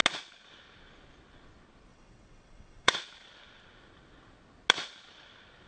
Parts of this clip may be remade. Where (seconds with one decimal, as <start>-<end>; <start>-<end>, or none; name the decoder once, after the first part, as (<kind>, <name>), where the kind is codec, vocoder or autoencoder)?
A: 1.9-2.9 (vocoder, WaveNeXt)